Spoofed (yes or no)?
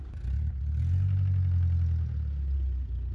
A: no